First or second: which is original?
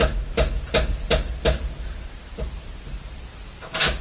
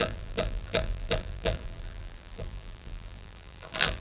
first